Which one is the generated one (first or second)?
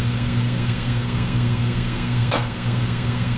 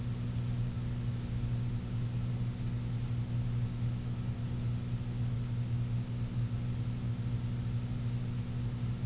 first